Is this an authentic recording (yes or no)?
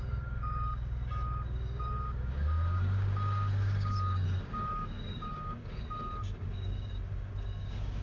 no